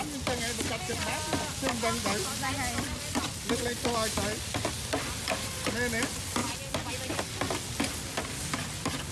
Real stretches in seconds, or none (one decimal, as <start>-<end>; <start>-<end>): 0.0-9.1